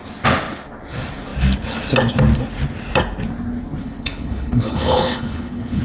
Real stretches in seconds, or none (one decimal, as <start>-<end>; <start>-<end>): 0.0-3.8